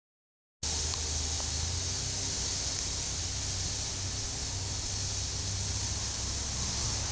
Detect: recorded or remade recorded